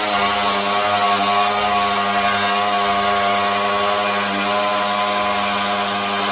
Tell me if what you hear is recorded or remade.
recorded